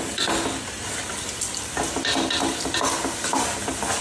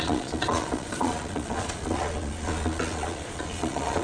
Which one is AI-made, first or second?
second